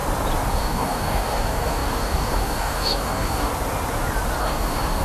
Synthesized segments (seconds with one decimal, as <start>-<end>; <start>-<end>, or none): 0.5-3.5; 4.4-5.0